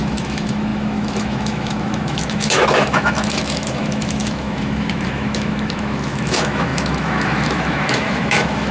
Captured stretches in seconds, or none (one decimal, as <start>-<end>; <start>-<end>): none